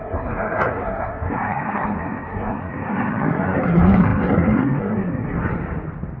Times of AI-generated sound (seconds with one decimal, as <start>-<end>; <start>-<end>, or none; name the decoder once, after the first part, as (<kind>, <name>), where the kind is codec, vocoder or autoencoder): 0.0-5.4 (codec, SNAC)